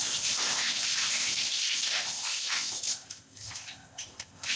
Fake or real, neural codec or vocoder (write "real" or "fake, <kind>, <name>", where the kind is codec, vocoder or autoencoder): fake, codec, ZipCodec